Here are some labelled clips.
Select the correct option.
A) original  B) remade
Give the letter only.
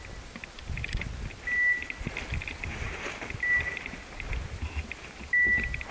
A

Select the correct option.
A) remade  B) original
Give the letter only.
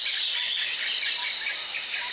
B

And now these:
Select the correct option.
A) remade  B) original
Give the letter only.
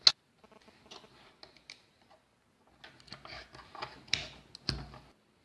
B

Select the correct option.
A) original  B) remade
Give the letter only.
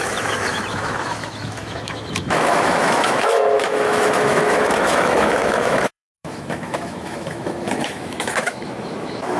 B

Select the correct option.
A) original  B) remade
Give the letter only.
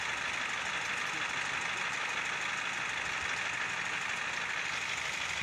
A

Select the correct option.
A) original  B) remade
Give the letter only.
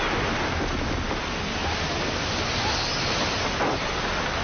A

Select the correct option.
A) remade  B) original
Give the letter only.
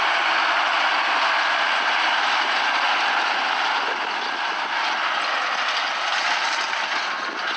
B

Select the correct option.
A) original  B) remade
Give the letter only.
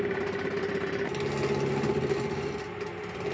A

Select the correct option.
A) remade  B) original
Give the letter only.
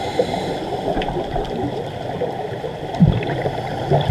B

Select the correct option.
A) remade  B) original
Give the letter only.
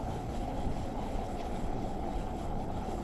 A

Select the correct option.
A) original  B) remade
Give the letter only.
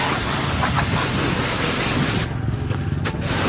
A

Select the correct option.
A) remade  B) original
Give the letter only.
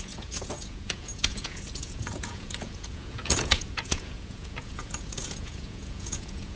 A